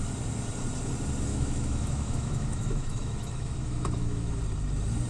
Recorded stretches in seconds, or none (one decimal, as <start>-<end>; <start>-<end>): 0.0-1.3; 4.4-5.1